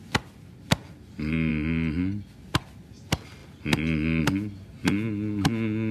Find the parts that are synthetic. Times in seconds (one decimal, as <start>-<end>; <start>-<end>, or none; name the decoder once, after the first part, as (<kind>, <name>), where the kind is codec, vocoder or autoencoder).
none